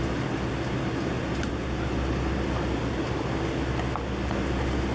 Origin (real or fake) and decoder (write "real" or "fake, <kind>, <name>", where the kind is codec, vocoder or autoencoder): real